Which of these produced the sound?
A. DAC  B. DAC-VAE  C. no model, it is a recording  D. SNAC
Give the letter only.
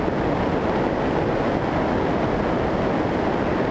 C